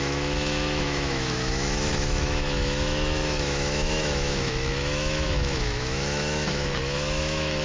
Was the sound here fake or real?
fake